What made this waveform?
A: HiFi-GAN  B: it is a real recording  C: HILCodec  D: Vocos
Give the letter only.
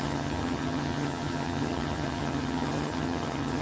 A